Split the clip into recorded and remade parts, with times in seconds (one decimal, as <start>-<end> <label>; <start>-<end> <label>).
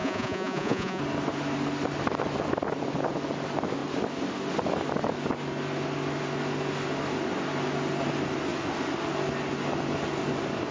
0.0-1.0 remade; 1.0-10.7 recorded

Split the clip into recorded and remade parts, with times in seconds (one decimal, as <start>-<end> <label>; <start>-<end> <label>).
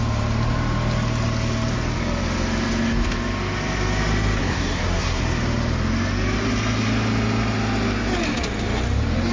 0.0-4.4 recorded; 4.4-5.2 remade; 5.2-9.3 recorded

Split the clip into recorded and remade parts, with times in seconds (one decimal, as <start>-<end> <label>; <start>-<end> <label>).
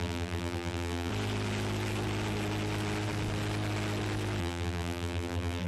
0.0-1.1 remade; 1.1-4.4 recorded; 4.4-5.7 remade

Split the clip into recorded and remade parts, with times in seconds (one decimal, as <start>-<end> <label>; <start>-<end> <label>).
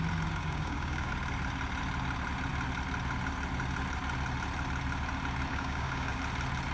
0.0-0.4 recorded; 0.4-1.1 remade; 1.1-5.5 recorded; 5.5-6.2 remade; 6.2-6.7 recorded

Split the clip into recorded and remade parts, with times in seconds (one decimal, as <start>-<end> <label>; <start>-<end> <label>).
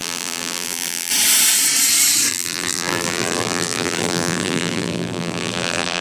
0.0-1.1 remade; 1.1-2.3 recorded; 2.3-6.0 remade